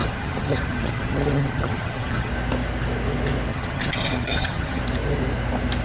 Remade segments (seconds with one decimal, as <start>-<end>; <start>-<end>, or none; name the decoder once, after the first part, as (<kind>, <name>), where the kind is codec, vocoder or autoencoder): 0.0-2.3 (vocoder, HiFi-GAN); 3.5-4.8